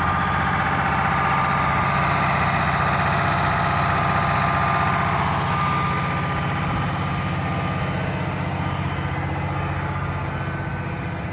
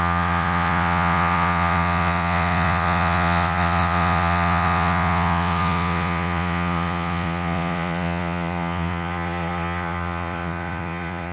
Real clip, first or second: first